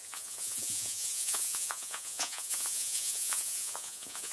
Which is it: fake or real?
fake